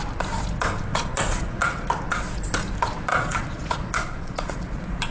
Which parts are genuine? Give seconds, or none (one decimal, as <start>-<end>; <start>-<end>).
0.0-0.9; 1.9-3.1